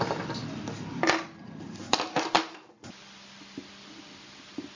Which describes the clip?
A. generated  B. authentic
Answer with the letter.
B